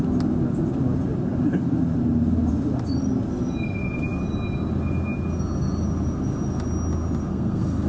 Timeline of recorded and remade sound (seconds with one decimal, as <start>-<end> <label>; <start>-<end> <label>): 0.0-7.3 recorded; 7.3-7.9 remade